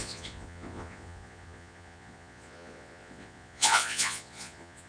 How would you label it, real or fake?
fake